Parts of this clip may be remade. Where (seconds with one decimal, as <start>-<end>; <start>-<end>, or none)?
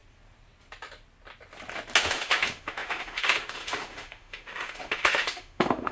2.0-5.9